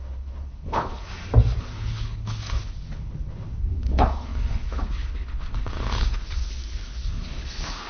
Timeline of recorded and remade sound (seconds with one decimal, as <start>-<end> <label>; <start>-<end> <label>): 0.0-1.1 remade; 1.1-1.6 recorded; 1.6-7.9 remade